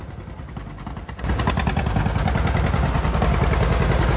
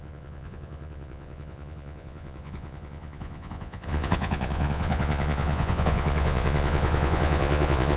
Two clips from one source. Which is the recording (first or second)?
first